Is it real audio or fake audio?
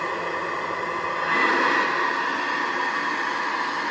real